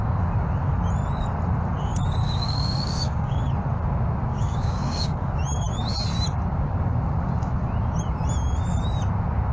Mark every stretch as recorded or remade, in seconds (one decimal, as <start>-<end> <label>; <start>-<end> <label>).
0.0-2.2 recorded; 2.2-3.4 remade; 3.4-4.3 recorded; 4.3-5.3 remade; 5.3-9.5 recorded